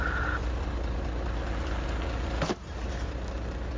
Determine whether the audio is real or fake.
real